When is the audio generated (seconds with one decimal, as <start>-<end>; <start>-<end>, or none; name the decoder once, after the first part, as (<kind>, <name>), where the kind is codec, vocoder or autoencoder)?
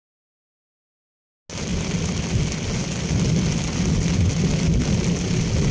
none